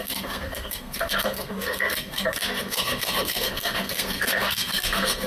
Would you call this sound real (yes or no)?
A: no